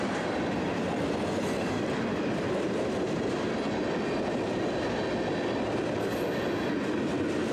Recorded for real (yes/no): yes